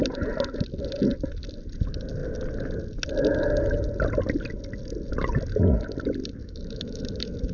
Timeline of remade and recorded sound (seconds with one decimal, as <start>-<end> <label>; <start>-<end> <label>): 0.0-6.4 recorded; 6.4-7.0 remade; 7.0-7.5 recorded